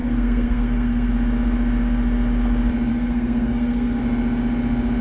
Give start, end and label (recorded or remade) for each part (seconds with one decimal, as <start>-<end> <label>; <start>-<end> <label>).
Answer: 0.0-1.1 remade; 1.1-2.9 recorded; 2.9-4.0 remade; 4.0-5.0 recorded